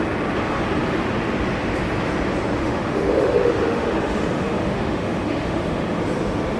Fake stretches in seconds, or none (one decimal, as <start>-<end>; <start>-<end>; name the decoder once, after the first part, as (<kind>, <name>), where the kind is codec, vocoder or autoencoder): 2.6-6.0 (autoencoder, DAC-VAE)